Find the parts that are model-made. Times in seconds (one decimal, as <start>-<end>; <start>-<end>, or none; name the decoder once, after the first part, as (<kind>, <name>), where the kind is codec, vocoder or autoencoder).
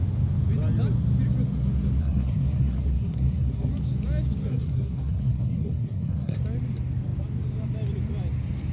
2.0-3.7 (codec, SNAC); 4.5-6.4